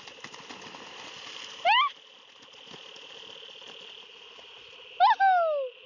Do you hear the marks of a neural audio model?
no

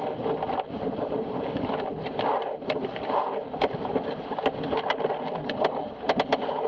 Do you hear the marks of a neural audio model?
no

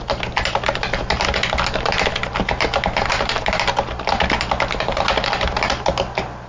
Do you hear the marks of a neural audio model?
no